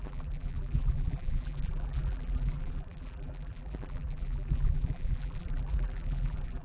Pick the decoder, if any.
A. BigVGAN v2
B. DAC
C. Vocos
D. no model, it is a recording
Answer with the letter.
A